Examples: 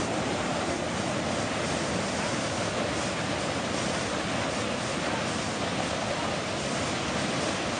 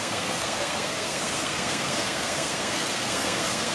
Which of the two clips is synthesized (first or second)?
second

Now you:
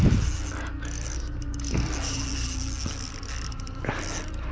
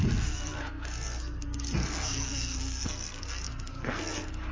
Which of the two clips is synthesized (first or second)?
second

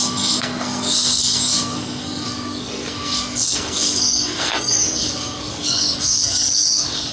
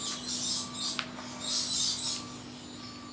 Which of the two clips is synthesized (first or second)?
first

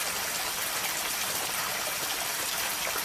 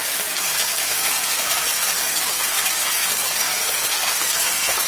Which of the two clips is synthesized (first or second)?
second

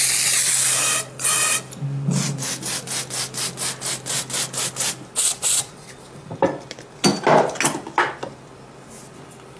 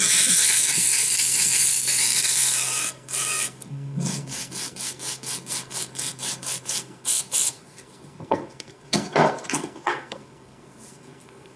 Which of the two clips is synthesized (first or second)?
second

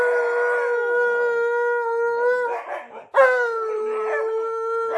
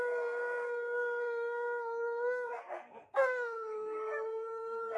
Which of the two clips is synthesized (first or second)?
second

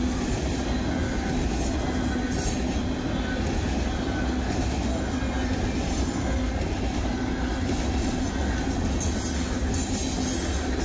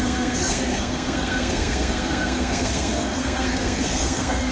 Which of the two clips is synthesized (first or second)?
second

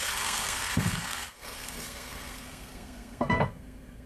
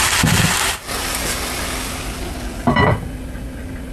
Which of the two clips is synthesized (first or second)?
first